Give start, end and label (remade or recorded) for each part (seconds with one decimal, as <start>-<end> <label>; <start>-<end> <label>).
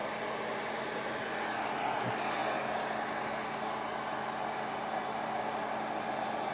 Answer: 0.0-6.5 recorded